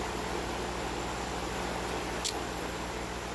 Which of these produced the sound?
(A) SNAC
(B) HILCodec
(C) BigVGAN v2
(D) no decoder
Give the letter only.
D